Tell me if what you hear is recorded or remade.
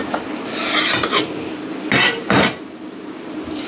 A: recorded